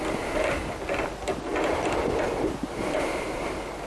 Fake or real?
real